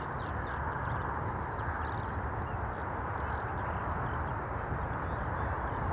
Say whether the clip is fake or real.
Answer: real